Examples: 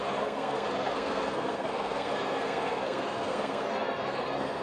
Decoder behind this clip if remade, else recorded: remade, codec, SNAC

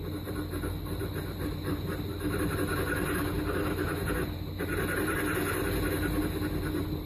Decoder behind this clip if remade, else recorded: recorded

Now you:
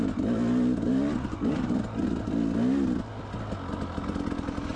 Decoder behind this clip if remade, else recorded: recorded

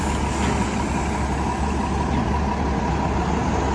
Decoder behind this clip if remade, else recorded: recorded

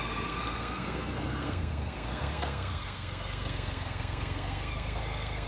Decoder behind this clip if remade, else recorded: remade, codec, SNAC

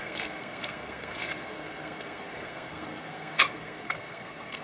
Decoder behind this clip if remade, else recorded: remade, codec, SNAC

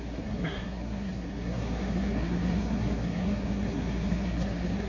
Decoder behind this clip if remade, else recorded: remade, codec, SNAC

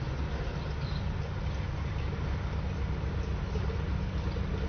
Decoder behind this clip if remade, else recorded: recorded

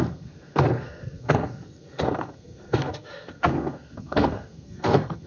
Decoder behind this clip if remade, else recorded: remade, codec, SNAC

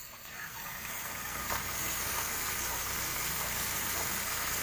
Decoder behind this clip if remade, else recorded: remade, codec, SNAC